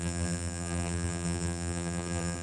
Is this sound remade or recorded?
remade